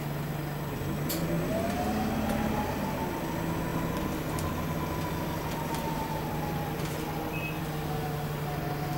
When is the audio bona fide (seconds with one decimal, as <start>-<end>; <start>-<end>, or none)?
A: 0.0-9.0